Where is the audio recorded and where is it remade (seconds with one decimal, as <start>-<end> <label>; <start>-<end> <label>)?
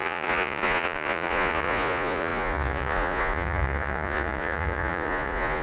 0.0-5.6 remade